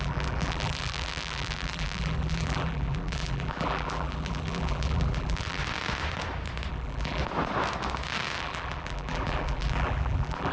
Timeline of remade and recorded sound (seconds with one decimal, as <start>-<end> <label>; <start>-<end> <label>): 0.0-5.6 remade; 5.6-6.7 recorded; 6.7-7.2 remade; 7.2-8.4 recorded; 8.4-10.5 remade